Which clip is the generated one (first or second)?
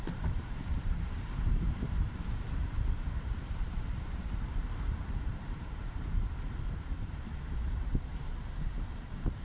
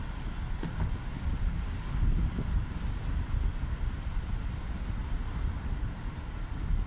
first